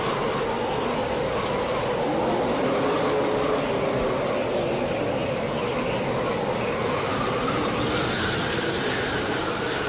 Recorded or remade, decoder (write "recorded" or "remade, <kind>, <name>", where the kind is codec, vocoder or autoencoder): recorded